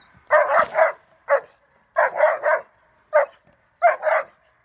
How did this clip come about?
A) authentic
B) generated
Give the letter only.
A